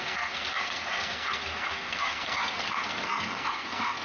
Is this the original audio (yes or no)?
no